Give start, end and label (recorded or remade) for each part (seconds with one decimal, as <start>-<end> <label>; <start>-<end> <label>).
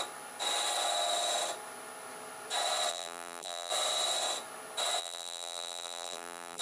0.0-2.9 recorded; 2.9-3.7 remade; 3.7-5.0 recorded; 5.0-6.6 remade